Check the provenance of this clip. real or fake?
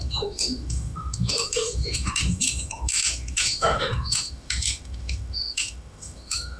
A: fake